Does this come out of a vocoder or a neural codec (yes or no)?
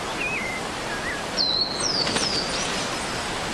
no